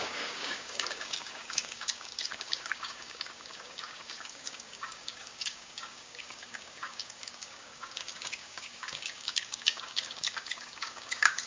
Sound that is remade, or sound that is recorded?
remade